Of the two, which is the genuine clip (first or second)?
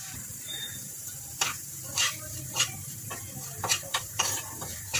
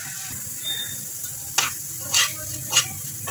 second